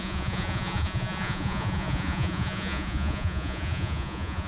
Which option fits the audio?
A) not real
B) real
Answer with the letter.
A